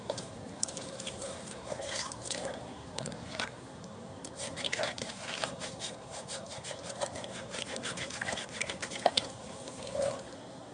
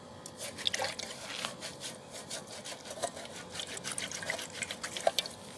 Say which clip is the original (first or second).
second